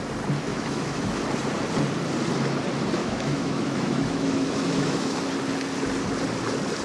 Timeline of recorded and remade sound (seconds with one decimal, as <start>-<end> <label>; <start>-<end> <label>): 0.0-0.5 recorded; 0.5-1.2 remade; 1.2-3.0 recorded; 3.0-5.2 remade; 5.2-6.8 recorded